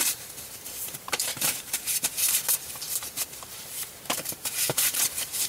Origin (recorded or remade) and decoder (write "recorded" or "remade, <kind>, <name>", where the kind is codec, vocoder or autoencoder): remade, vocoder, BigVGAN v2